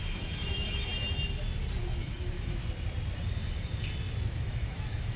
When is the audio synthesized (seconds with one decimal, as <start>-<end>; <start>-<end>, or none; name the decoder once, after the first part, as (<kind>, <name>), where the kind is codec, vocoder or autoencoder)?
0.0-0.9 (autoencoder, DAC-VAE); 1.8-2.6; 4.4-5.2